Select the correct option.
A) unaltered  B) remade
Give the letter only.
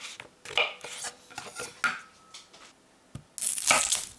A